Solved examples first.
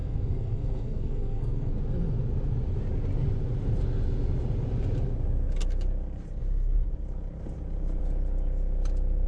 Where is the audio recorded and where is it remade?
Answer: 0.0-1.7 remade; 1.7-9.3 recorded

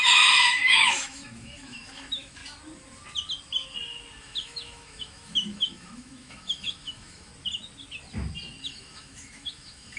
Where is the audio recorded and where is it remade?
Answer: 0.0-2.4 remade; 2.4-4.2 recorded; 4.2-7.3 remade; 7.3-8.6 recorded; 8.6-10.0 remade

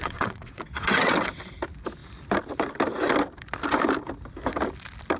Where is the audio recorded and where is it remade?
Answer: 0.0-1.4 remade; 1.4-5.2 recorded

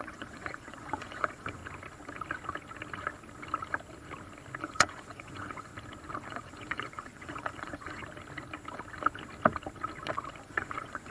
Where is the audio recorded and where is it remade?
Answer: 0.0-1.6 remade; 1.6-4.6 recorded; 4.6-5.7 remade; 5.7-6.3 recorded; 6.3-8.0 remade; 8.0-10.4 recorded; 10.4-11.1 remade

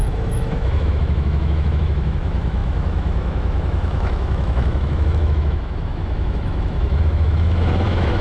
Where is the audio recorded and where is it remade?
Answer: 0.0-8.2 remade

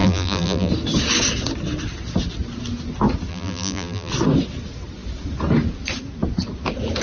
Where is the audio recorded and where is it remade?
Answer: 0.0-0.7 remade; 0.7-3.3 recorded; 3.3-4.1 remade; 4.1-7.0 recorded

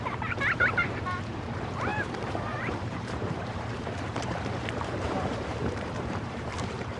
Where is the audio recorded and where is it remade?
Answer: 0.0-7.0 remade

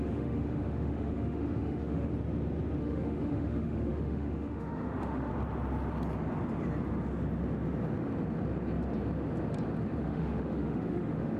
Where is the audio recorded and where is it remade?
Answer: 0.0-2.1 remade; 2.1-2.8 recorded; 2.8-5.3 remade; 5.3-10.0 recorded; 10.0-11.4 remade